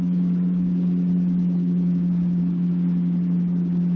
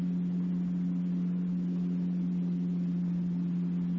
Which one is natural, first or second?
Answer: second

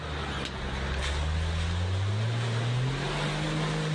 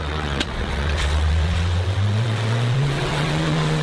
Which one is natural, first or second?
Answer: first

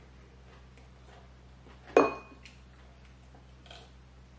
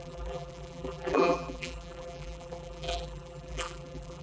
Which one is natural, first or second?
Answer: first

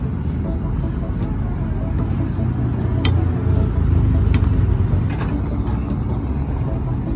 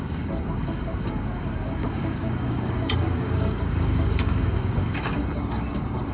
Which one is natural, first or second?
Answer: first